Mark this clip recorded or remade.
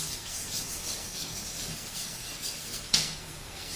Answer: remade